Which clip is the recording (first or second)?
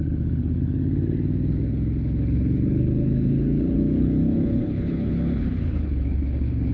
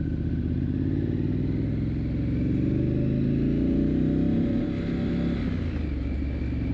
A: second